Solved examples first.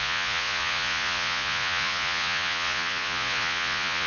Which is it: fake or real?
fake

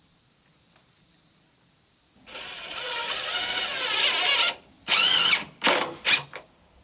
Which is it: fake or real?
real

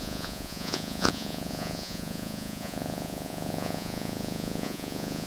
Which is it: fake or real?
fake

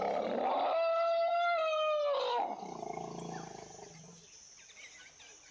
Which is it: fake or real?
real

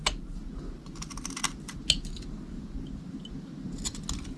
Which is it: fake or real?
real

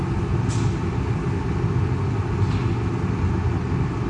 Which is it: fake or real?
real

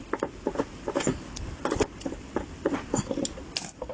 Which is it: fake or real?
real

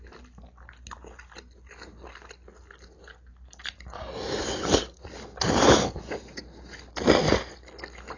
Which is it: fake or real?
real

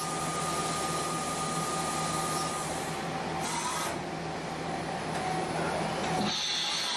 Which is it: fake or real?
real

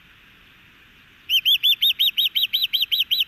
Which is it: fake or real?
real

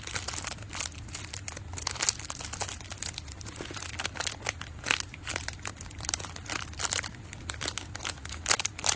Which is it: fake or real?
real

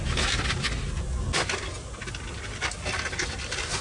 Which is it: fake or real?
real